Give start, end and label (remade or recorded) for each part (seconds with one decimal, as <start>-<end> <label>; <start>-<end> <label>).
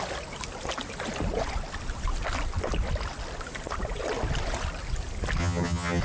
0.0-5.4 recorded; 5.4-6.0 remade